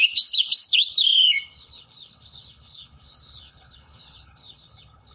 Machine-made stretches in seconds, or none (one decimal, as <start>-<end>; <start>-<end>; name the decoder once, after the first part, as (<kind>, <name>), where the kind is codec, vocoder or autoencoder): 0.0-5.1 (codec, HILCodec)